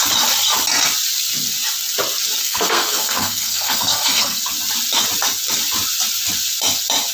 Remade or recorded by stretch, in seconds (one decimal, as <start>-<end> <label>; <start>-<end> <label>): 0.0-2.4 recorded; 2.4-4.4 remade; 4.4-7.1 recorded